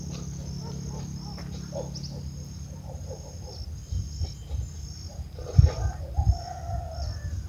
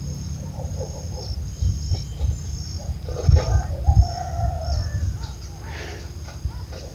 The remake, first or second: second